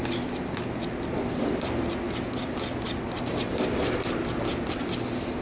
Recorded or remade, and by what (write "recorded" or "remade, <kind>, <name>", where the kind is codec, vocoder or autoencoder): recorded